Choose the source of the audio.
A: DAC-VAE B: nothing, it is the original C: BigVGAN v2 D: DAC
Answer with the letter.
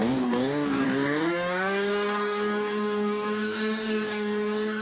D